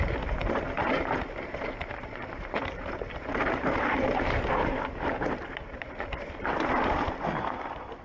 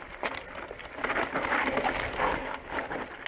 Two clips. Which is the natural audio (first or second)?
second